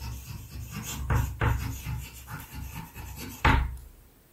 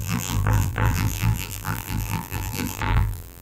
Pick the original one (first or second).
first